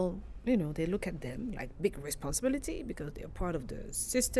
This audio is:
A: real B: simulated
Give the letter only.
A